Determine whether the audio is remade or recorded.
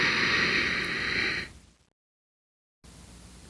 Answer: recorded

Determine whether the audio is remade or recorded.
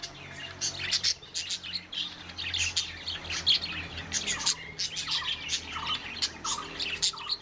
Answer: recorded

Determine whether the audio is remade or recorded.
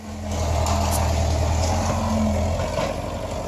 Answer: recorded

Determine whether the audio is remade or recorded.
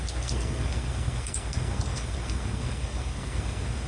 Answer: remade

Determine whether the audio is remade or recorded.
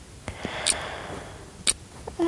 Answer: recorded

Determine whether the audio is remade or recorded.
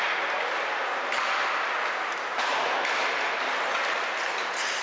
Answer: recorded